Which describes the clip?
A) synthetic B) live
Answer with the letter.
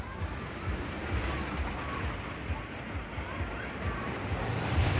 B